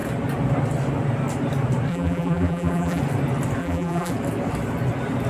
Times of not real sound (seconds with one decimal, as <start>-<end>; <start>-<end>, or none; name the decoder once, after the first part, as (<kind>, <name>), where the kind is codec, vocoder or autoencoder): 1.9-3.0 (vocoder, BigVGAN v2); 3.6-4.1